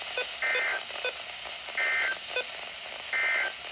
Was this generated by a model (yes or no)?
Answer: no